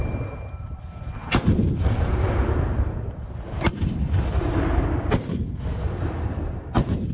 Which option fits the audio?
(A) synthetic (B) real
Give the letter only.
A